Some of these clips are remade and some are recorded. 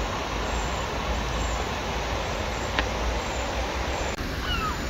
recorded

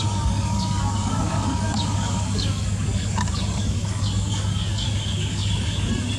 remade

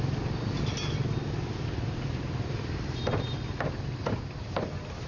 recorded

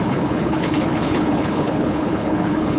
remade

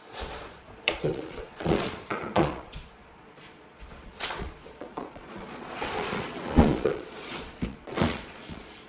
remade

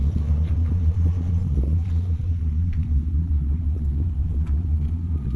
remade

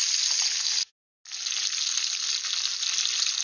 recorded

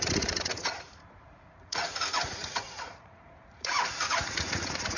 remade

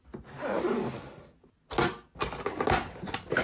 recorded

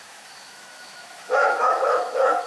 remade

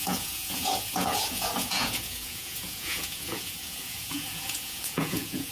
remade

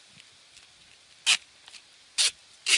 recorded